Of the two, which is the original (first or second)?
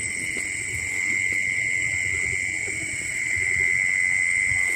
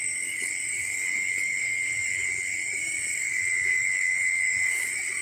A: first